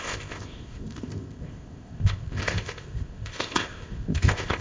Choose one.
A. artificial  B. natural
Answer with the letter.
A